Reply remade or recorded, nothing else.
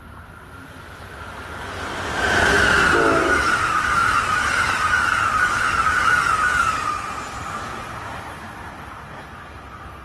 recorded